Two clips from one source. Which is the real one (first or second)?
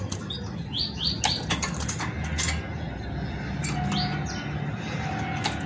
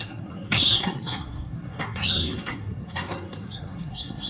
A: first